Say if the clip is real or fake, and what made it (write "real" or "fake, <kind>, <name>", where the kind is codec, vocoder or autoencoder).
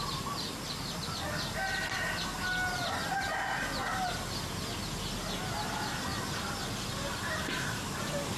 real